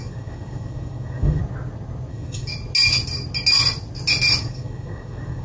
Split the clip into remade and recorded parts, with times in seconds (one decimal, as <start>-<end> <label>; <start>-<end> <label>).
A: 0.0-1.4 remade; 1.4-2.1 recorded; 2.1-2.5 remade; 2.5-4.4 recorded; 4.4-5.4 remade